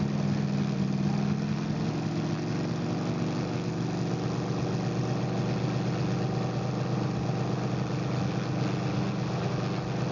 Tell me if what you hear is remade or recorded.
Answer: recorded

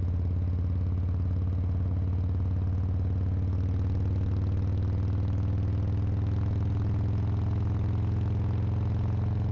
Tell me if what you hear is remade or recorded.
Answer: recorded